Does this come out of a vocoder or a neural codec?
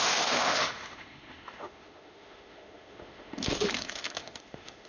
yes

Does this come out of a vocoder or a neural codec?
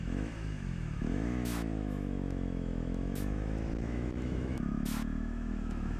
yes